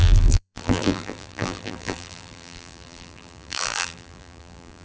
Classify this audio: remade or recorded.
remade